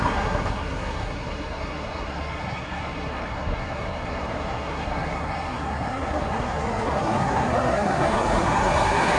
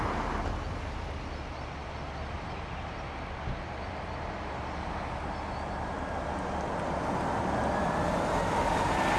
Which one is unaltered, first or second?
second